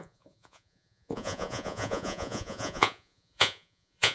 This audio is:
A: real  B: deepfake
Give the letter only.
B